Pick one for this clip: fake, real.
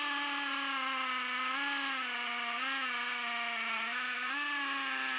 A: real